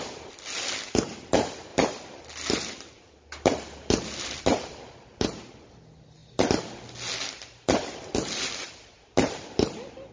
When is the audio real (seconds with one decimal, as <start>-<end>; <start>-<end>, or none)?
0.0-10.1